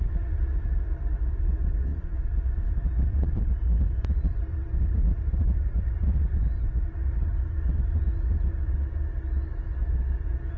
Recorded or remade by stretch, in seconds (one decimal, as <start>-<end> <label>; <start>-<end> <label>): 0.0-1.9 recorded; 1.9-6.5 remade; 6.5-10.6 recorded